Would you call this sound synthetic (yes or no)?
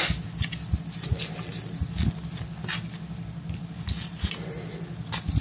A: no